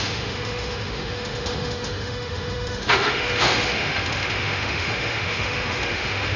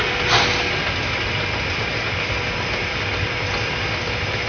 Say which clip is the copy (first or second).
first